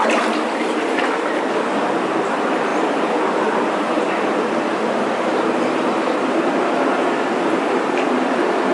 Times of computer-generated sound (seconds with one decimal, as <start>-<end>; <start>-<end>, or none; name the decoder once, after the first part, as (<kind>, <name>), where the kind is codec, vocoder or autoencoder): none